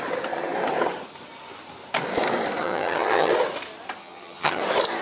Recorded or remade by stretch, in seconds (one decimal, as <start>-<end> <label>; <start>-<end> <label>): 0.0-2.6 recorded; 2.6-3.3 remade; 3.3-4.0 recorded; 4.0-4.6 remade; 4.6-5.0 recorded